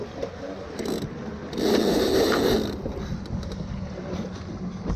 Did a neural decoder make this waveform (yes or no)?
no